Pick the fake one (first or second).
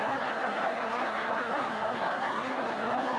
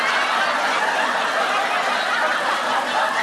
first